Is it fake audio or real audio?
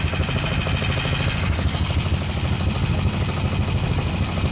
real